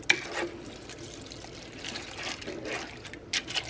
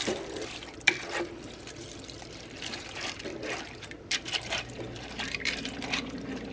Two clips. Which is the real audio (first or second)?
first